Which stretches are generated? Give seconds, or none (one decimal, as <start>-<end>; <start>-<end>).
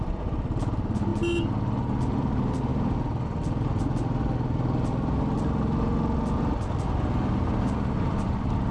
0.0-1.1; 2.0-2.7; 7.9-8.7